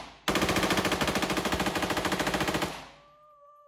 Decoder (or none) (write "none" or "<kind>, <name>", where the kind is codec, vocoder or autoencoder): none